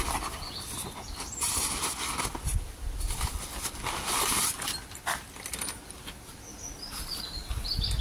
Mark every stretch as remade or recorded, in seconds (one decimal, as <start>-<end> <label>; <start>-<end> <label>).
0.0-2.5 recorded; 2.5-4.0 remade; 4.0-6.5 recorded; 6.5-7.2 remade; 7.2-8.0 recorded